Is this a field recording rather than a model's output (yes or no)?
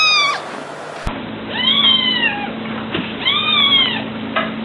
yes